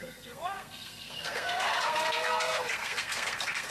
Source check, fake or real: fake